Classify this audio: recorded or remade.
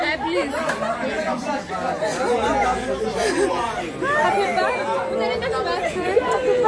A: recorded